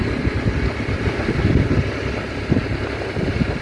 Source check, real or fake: fake